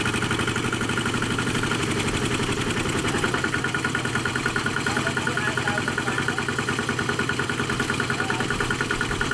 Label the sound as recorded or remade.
recorded